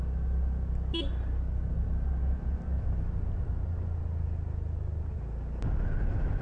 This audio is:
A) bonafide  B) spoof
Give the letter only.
A